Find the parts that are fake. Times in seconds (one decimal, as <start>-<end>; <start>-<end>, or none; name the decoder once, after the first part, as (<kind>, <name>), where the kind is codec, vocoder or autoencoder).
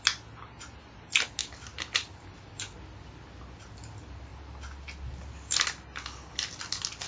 none